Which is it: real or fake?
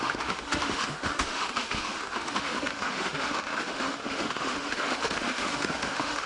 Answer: fake